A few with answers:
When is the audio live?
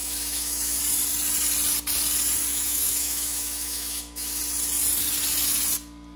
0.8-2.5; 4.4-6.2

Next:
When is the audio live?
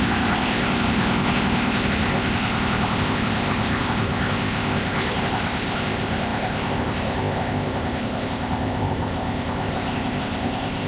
none